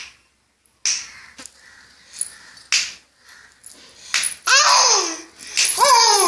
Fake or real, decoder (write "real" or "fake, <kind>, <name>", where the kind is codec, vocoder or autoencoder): real